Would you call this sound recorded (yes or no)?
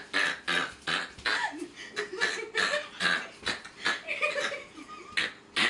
yes